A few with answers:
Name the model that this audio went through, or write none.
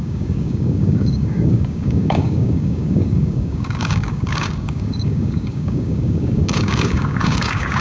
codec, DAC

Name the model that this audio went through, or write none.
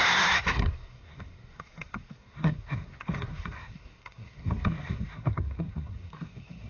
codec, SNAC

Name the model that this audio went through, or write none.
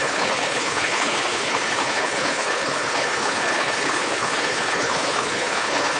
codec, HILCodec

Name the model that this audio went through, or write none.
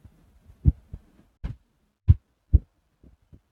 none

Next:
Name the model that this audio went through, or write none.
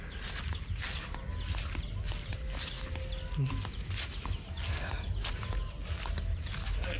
none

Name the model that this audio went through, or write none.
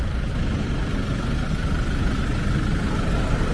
none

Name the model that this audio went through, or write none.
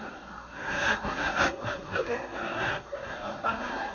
codec, SNAC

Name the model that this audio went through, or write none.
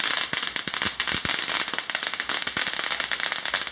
none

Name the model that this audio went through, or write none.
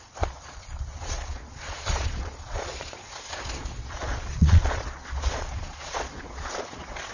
vocoder, Vocos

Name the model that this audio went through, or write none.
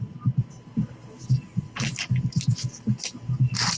none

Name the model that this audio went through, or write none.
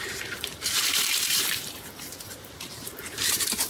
vocoder, BigVGAN v2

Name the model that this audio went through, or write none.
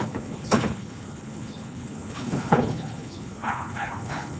codec, HILCodec